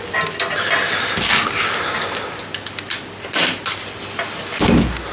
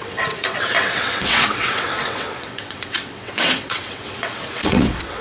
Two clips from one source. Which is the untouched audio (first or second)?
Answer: first